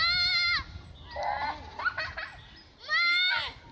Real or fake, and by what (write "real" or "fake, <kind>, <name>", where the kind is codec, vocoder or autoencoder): real